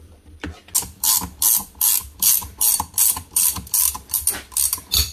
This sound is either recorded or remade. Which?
recorded